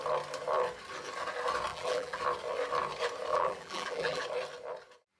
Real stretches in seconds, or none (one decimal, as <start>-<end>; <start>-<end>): 0.0-1.7; 2.2-3.3; 4.2-5.2